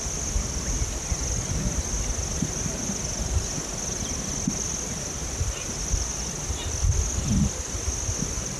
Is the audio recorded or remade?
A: recorded